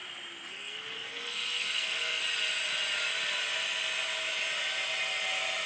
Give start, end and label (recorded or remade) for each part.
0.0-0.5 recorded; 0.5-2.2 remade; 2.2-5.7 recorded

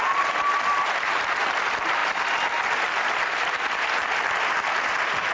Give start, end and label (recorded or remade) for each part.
0.0-5.3 recorded

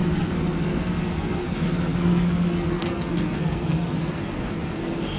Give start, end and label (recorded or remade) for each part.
0.0-5.2 remade

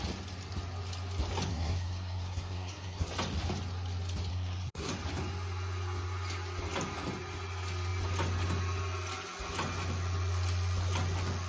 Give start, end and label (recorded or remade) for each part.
0.0-1.5 recorded; 1.5-3.1 remade; 3.1-4.3 recorded; 4.3-4.9 remade; 4.9-11.5 recorded

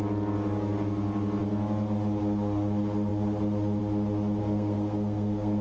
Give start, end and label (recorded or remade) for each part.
0.0-4.4 recorded; 4.4-5.6 remade

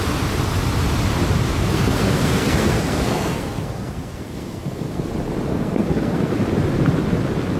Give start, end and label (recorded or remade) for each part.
0.0-1.5 recorded; 1.5-5.1 remade; 5.1-5.5 recorded; 5.5-6.3 remade; 6.3-7.6 recorded